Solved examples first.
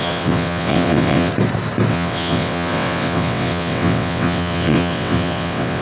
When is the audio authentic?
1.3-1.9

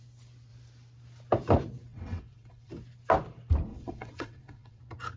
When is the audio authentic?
0.0-1.9; 2.7-3.7; 4.8-5.2